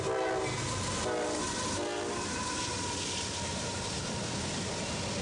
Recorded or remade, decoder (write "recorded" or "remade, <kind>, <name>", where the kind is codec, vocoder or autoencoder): recorded